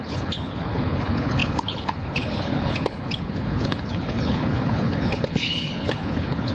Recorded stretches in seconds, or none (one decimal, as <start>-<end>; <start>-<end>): none